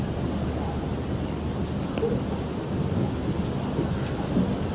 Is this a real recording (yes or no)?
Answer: yes